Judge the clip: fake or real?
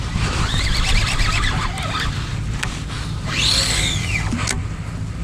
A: real